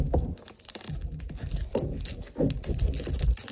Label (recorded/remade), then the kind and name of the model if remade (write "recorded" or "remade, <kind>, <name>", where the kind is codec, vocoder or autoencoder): recorded